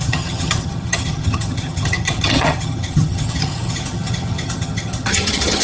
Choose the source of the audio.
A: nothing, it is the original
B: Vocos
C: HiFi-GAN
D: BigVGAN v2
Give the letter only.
C